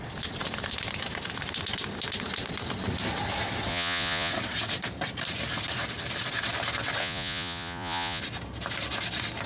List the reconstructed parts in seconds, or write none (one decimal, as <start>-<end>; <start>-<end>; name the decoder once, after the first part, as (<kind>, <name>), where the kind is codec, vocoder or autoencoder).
3.7-4.3 (vocoder, Vocos); 7.0-8.2